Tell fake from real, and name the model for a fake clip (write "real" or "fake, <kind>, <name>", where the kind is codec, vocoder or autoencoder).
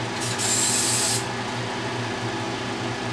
real